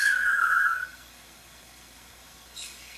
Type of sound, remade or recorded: remade